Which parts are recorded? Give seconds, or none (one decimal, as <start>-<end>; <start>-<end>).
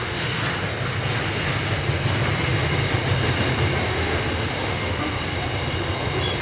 0.4-3.9; 5.1-6.4